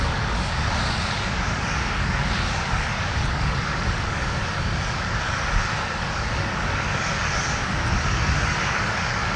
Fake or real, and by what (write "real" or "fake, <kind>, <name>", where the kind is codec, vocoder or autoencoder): fake, codec, DAC